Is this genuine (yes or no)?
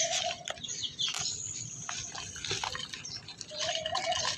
yes